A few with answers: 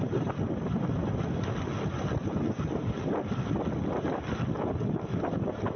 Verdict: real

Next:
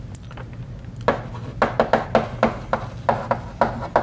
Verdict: real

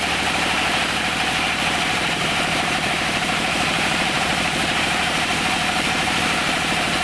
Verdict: fake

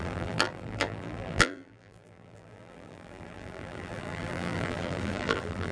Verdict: fake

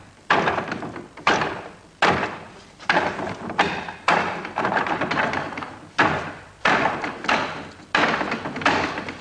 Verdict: fake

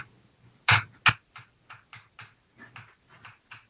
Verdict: real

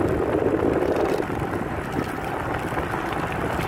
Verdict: fake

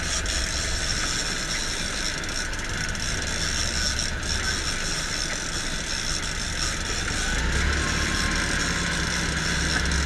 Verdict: real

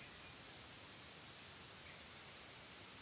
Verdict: real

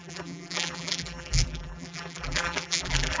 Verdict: fake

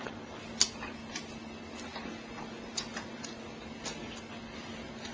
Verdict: real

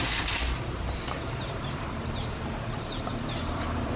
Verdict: fake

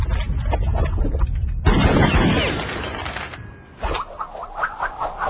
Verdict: real